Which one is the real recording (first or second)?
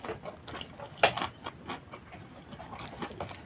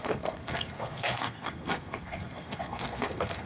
first